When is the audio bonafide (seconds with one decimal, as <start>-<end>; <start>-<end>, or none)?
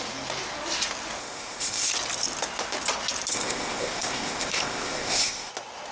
0.0-1.2; 1.9-3.3; 5.5-5.9